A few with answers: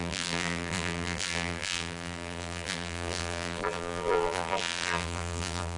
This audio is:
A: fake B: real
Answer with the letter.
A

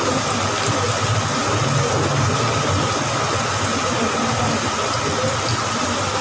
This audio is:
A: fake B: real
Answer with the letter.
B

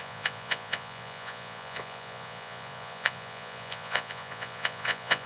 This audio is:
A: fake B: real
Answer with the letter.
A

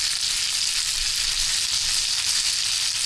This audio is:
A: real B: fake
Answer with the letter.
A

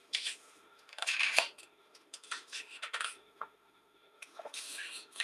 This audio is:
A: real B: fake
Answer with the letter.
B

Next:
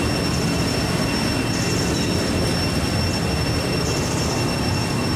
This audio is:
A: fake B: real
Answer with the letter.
B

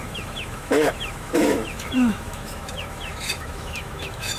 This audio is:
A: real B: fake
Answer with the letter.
B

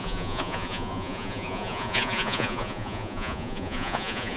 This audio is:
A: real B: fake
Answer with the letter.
B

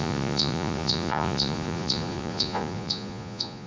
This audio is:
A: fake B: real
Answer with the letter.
A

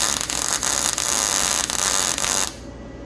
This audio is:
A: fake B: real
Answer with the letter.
B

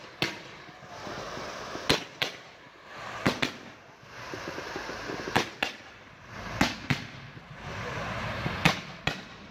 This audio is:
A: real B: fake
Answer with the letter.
A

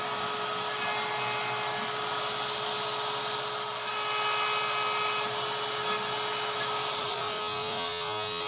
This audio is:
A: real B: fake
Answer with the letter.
A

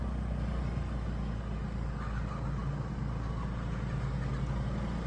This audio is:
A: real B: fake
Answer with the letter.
A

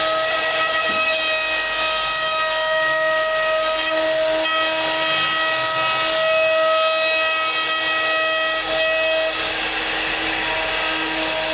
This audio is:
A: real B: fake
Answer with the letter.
A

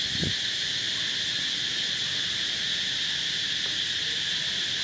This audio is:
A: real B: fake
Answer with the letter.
A